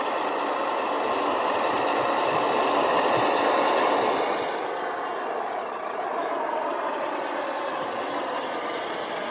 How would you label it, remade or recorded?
recorded